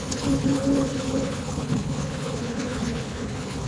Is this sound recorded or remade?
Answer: remade